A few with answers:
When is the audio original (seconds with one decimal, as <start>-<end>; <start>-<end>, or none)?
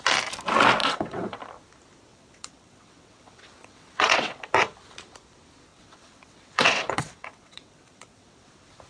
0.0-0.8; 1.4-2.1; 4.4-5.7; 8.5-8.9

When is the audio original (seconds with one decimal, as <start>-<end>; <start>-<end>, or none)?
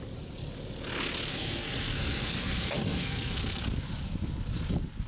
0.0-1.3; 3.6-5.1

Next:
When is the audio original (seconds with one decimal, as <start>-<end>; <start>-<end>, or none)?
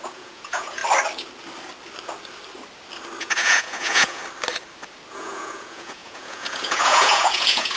0.8-3.2; 4.2-5.1